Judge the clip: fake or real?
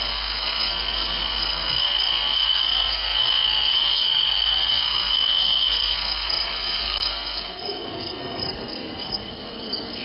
fake